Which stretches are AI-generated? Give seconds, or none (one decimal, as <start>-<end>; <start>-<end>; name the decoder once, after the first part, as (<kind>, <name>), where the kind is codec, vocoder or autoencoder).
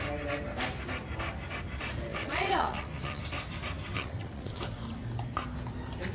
2.1-3.2 (vocoder, WaveNeXt); 3.9-4.6